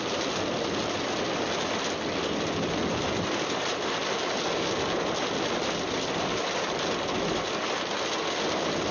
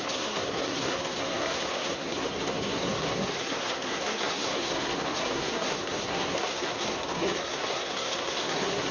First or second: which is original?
first